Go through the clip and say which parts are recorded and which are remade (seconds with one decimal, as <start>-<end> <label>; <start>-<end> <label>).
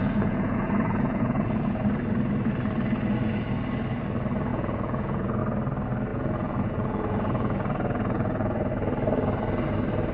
0.0-1.8 remade; 1.8-4.5 recorded; 4.5-5.4 remade; 5.4-6.1 recorded; 6.1-8.7 remade; 8.7-10.1 recorded